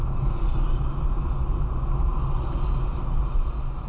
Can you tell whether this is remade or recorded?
recorded